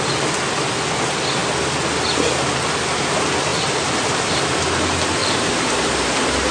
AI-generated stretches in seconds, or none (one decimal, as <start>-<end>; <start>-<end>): 3.5-4.2; 5.2-6.5